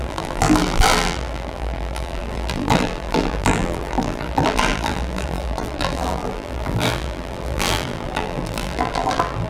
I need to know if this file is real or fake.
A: fake